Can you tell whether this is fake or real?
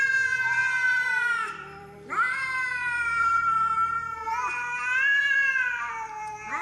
fake